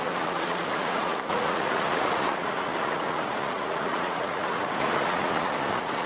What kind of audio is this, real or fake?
fake